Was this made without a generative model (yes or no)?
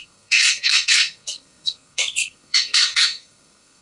no